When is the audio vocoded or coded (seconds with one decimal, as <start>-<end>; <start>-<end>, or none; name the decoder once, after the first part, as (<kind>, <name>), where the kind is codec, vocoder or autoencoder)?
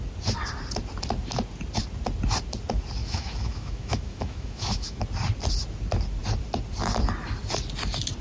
3.0-5.0 (autoencoder, DAC-VAE)